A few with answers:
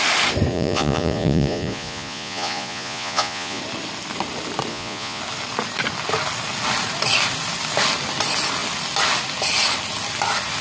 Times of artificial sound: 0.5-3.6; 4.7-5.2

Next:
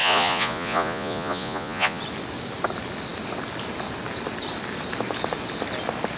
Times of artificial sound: 0.0-2.0

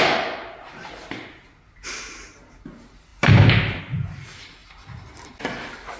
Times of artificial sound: none